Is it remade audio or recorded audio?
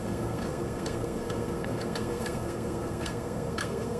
remade